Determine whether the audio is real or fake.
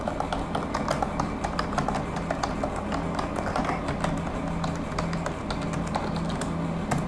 real